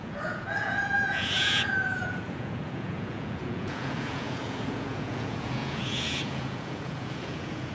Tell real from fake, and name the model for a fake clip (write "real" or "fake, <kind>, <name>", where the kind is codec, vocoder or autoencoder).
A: fake, vocoder, Vocos